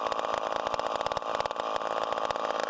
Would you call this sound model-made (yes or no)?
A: no